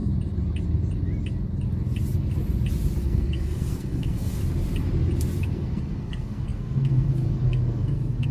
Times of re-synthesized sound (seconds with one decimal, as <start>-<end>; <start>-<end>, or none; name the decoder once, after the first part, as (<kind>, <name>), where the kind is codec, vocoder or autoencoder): 3.0-4.4 (codec, SNAC); 5.4-8.3